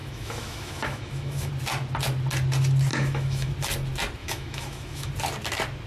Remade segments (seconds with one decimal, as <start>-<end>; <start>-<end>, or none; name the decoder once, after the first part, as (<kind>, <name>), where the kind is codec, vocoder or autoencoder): 0.0-1.5 (autoencoder, DAC-VAE); 2.9-3.5; 4.2-5.1